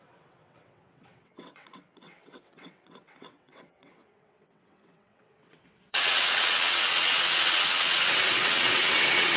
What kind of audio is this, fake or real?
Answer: fake